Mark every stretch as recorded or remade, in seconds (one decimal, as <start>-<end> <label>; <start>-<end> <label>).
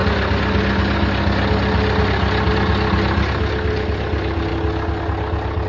0.0-5.7 recorded